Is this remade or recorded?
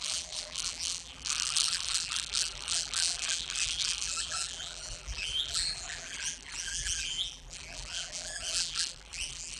remade